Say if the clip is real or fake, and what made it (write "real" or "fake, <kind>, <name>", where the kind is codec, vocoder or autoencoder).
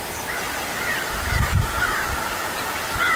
real